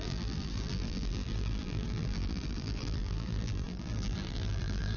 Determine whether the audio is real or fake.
fake